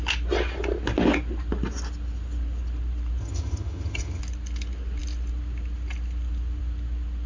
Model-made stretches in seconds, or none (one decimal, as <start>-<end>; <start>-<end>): 3.2-4.2